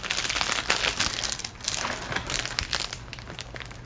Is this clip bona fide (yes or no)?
yes